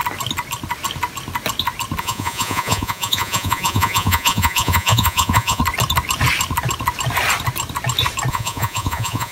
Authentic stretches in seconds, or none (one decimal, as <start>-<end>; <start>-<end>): 0.0-2.0; 5.6-8.3